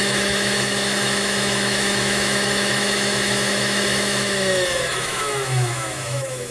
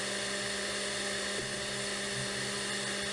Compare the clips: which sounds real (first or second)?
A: second